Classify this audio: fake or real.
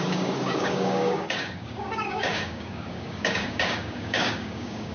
fake